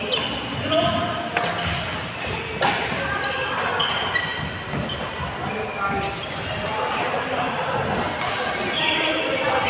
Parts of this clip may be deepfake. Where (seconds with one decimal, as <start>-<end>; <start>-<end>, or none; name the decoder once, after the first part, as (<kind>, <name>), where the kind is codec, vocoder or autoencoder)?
none